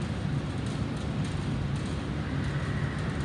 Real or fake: real